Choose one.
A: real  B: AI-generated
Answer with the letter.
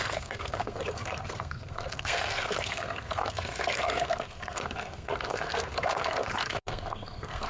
B